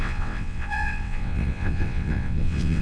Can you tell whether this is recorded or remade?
remade